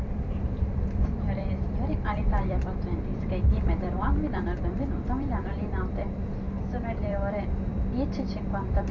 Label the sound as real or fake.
fake